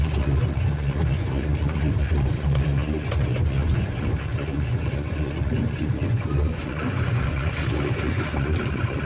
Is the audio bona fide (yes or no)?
no